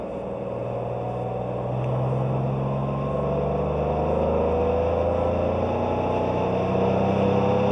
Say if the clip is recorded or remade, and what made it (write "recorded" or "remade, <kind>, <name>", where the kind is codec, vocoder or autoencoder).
recorded